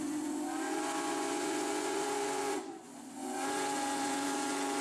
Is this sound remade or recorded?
remade